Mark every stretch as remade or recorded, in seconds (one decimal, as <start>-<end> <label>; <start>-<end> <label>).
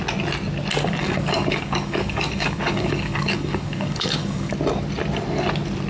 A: 0.0-1.0 recorded; 1.0-4.5 remade; 4.5-5.9 recorded